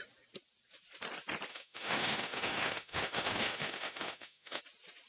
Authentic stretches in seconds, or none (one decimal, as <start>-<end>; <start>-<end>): 0.0-1.5; 4.6-5.1

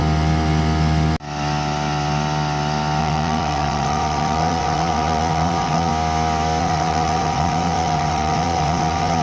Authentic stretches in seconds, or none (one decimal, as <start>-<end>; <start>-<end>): 0.0-3.0; 5.9-6.6

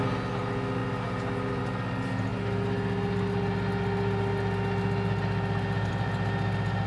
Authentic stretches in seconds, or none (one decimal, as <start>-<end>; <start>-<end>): 0.0-6.9

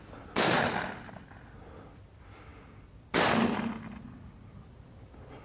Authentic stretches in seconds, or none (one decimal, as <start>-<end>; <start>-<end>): 0.0-5.4

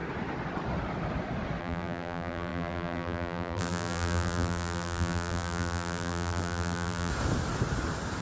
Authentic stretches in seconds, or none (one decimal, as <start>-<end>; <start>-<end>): 0.0-1.6; 7.1-8.2

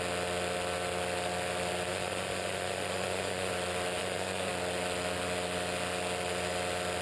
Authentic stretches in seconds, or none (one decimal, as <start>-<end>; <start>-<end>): 0.0-1.9; 3.5-4.0; 4.5-7.0